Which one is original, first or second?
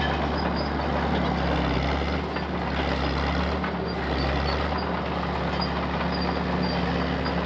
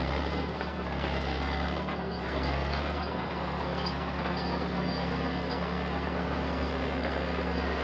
first